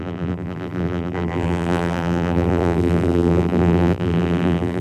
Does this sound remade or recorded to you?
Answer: remade